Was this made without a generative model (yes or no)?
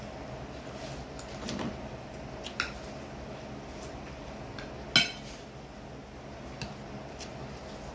yes